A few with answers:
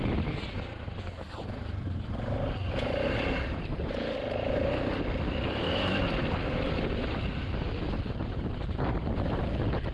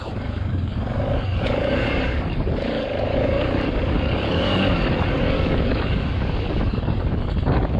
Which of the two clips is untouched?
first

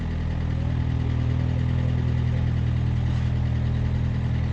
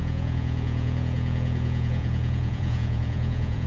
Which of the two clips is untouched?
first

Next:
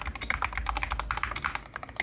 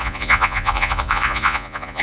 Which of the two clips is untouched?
first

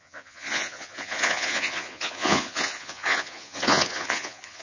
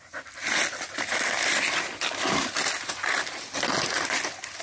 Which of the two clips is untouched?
second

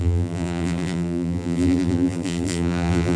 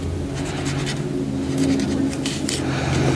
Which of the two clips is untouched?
second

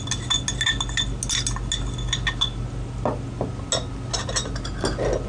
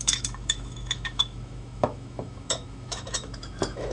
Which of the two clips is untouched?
first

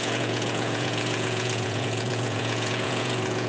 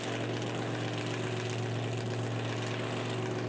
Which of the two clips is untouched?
second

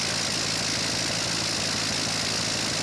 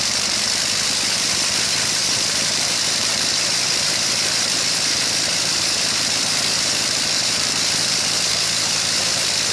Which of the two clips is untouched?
first